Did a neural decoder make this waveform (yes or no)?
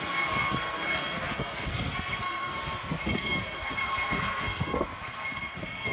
yes